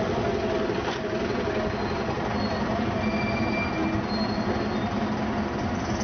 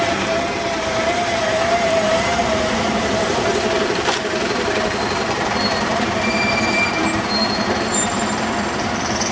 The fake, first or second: second